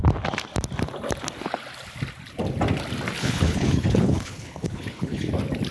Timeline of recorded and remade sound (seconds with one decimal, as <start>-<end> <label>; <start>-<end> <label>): 0.0-3.2 recorded; 3.2-5.3 remade; 5.3-5.7 recorded